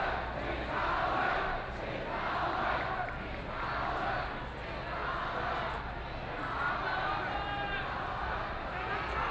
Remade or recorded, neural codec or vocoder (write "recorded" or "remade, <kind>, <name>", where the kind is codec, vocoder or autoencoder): recorded